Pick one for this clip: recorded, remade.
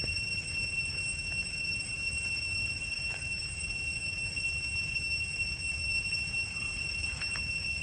remade